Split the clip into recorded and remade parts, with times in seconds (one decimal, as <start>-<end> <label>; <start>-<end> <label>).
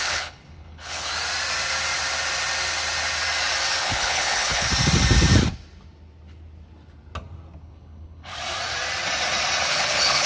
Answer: 0.0-1.1 remade; 1.1-3.8 recorded; 3.8-4.7 remade; 4.7-7.6 recorded; 7.6-8.3 remade; 8.3-9.7 recorded; 9.7-10.3 remade